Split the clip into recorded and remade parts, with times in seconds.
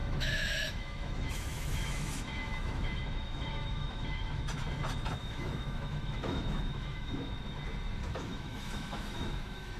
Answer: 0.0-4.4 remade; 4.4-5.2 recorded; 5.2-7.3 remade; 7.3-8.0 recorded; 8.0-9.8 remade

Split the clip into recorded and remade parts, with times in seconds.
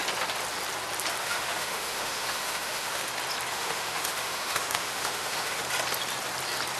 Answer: 0.0-1.2 recorded; 1.2-3.0 remade; 3.0-3.5 recorded; 3.5-5.6 remade; 5.6-6.8 recorded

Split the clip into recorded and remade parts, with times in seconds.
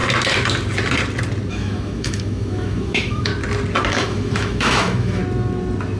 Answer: 0.0-1.5 recorded; 1.5-3.3 remade; 3.3-3.9 recorded; 3.9-5.2 remade; 5.2-6.0 recorded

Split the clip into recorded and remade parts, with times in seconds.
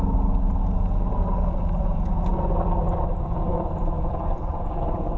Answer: 0.0-3.5 recorded; 3.5-4.1 remade; 4.1-5.2 recorded